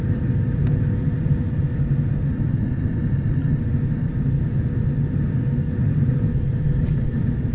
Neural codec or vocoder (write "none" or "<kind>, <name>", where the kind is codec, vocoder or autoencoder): none